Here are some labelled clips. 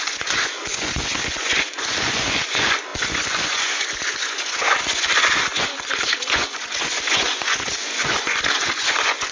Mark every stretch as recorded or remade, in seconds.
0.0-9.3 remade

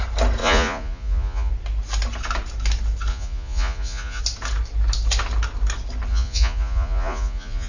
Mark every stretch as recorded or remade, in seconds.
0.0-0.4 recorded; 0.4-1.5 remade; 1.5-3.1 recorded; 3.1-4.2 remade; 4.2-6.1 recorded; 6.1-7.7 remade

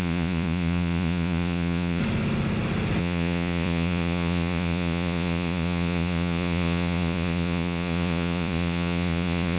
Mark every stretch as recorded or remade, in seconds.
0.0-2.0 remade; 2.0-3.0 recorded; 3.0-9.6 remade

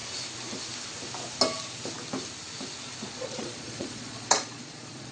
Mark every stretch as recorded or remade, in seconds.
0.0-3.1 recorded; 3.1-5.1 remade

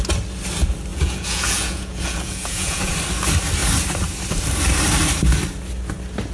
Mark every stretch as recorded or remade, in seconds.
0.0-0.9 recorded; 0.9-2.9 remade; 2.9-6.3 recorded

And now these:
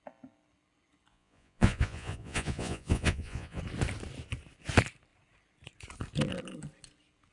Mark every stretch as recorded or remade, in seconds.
0.0-1.1 recorded; 1.1-3.6 remade; 3.6-7.3 recorded

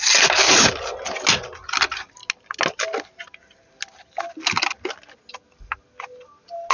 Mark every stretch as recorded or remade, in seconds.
0.0-6.7 recorded